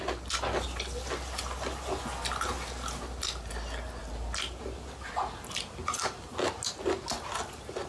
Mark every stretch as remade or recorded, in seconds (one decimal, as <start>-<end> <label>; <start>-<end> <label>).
0.0-7.9 recorded

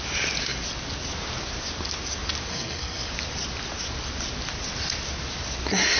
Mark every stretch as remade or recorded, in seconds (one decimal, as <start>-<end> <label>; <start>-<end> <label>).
0.0-2.5 recorded; 2.5-3.1 remade; 3.1-6.0 recorded

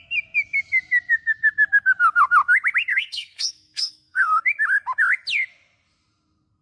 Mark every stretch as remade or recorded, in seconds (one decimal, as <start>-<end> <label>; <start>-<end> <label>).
0.0-2.9 recorded; 2.9-4.4 remade; 4.4-6.6 recorded

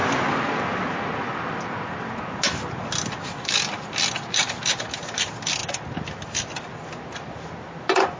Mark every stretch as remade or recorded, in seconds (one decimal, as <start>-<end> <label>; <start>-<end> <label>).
0.0-8.2 recorded

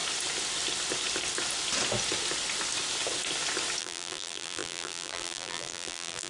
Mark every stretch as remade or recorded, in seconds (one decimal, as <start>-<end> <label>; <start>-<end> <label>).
0.0-3.8 recorded; 3.8-6.3 remade

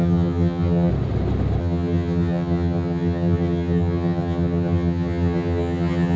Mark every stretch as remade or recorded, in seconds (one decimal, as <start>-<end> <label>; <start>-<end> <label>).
0.0-0.9 remade; 0.9-1.6 recorded; 1.6-6.2 remade